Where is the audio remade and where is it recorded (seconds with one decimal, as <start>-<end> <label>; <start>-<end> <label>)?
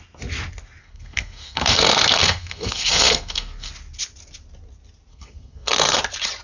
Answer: 0.0-0.8 recorded; 0.8-3.7 remade; 3.7-5.1 recorded; 5.1-6.0 remade; 6.0-6.4 recorded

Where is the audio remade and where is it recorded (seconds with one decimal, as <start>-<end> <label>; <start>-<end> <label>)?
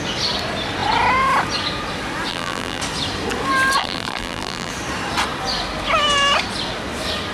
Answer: 0.0-2.3 recorded; 2.3-2.8 remade; 2.8-3.8 recorded; 3.8-4.7 remade; 4.7-7.3 recorded